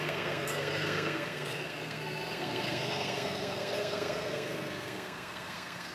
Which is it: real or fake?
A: fake